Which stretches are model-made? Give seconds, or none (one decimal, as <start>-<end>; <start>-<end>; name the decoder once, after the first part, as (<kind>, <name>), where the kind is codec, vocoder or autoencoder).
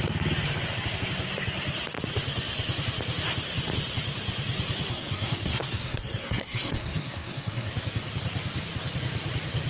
4.9-7.7 (codec, SNAC)